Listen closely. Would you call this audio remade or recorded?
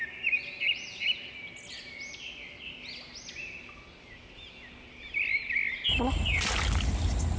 recorded